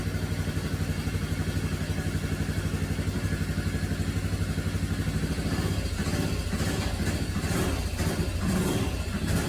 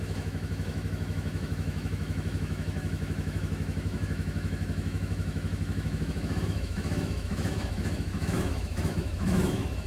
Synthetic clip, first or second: second